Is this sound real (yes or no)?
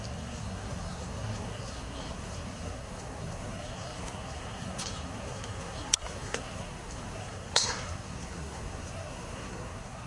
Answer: no